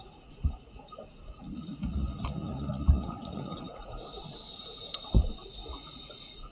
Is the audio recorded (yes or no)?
no